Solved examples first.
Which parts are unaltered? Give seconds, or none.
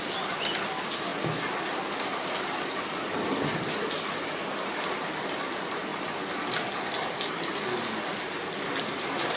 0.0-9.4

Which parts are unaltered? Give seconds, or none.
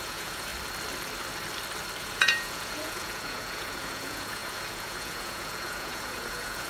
0.5-2.0